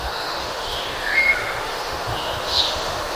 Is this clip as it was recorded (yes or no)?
no